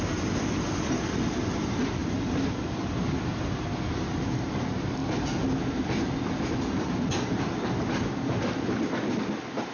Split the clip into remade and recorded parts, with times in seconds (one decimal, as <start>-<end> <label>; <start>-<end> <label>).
0.0-9.7 recorded